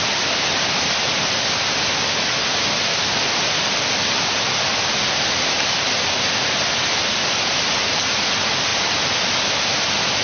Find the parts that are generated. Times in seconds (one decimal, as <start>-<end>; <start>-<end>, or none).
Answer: none